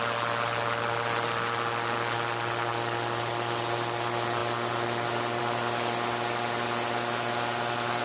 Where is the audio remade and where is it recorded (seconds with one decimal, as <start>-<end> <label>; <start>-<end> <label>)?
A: 0.0-8.0 recorded